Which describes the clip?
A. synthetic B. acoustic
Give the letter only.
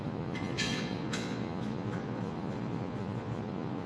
A